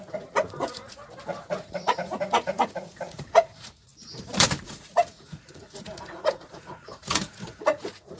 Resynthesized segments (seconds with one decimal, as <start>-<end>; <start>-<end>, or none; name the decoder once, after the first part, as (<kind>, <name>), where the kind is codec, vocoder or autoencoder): 0.0-1.0 (vocoder, Vocos); 1.5-3.9; 4.6-8.2